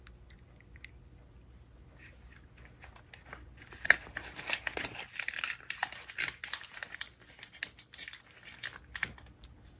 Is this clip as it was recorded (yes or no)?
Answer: yes